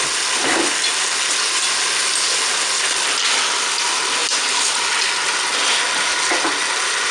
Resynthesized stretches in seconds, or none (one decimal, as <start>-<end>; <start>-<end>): none

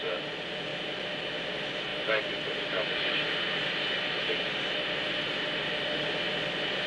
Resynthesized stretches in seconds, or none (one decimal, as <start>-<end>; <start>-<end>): none

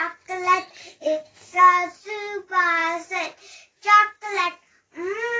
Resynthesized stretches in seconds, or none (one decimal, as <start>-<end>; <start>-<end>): 0.8-1.6

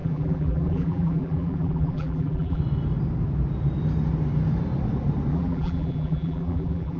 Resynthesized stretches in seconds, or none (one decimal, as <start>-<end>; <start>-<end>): 0.0-2.6; 5.3-7.0

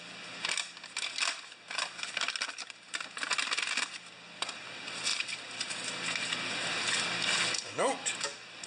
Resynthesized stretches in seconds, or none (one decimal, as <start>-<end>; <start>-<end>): 5.1-6.7